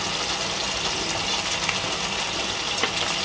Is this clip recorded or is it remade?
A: recorded